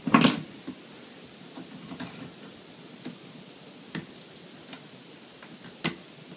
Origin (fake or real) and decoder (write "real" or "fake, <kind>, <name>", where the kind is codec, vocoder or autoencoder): real